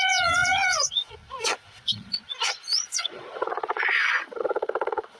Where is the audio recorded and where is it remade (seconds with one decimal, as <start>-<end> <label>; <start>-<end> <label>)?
0.0-5.2 remade